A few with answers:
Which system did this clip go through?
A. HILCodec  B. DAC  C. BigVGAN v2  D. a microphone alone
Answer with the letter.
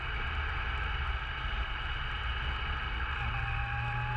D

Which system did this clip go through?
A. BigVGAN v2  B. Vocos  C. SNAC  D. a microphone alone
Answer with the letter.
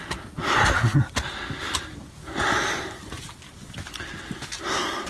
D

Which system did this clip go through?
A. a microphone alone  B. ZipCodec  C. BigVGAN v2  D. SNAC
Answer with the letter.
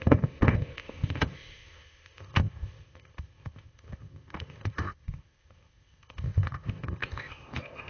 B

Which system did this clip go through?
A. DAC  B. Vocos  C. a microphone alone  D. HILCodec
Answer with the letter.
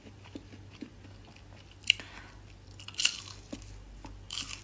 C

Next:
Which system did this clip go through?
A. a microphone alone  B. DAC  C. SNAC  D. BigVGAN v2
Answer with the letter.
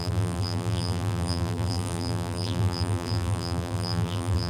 D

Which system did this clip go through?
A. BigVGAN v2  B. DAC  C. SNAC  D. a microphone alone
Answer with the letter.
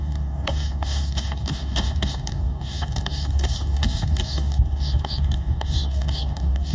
B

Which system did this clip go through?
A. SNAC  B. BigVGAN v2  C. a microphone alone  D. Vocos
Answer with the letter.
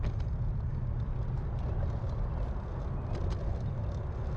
C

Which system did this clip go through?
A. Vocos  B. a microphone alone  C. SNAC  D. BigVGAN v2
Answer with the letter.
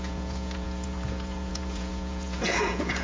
A